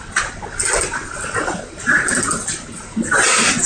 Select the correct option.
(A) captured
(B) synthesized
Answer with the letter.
A